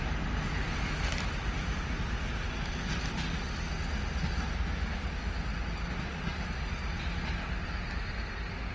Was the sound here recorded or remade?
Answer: recorded